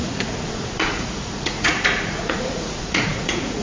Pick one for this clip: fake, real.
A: fake